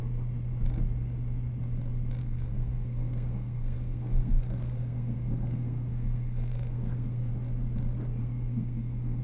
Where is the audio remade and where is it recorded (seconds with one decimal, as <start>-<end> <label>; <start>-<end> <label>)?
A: 0.0-2.2 recorded; 2.2-7.3 remade; 7.3-8.2 recorded; 8.2-9.2 remade